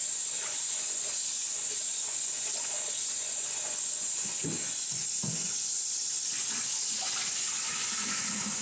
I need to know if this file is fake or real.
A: fake